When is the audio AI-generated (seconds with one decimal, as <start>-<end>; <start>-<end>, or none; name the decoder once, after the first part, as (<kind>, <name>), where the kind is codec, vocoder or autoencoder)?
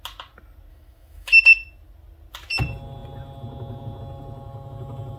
0.7-1.4 (autoencoder, DAC-VAE)